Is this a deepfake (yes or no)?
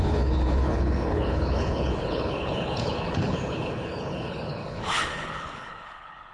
yes